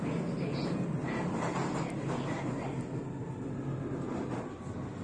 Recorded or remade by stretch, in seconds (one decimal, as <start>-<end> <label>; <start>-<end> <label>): 0.0-5.0 recorded